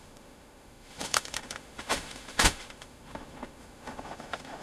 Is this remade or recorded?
remade